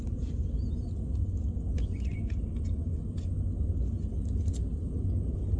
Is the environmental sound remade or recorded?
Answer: recorded